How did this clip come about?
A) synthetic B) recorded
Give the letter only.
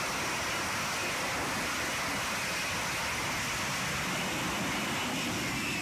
B